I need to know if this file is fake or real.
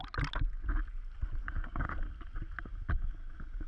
real